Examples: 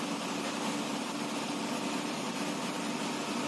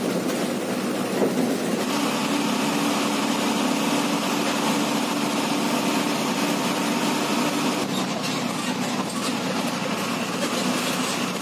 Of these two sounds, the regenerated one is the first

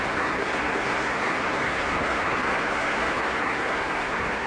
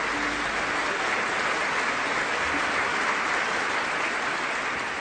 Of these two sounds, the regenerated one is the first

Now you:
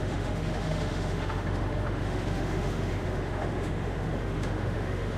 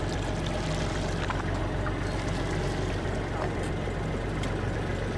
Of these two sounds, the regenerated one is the first